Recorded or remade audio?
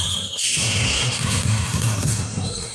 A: remade